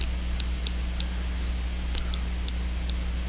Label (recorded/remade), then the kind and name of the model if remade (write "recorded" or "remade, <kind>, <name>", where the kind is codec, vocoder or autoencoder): recorded